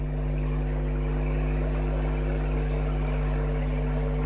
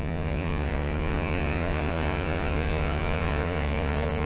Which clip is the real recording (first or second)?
first